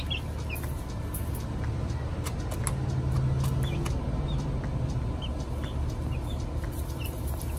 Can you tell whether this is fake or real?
real